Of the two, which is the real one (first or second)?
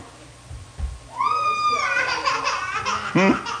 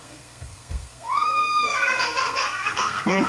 first